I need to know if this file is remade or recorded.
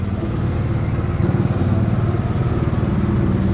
recorded